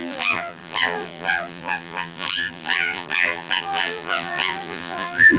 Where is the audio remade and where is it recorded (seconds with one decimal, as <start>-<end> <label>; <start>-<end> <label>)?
0.0-5.4 remade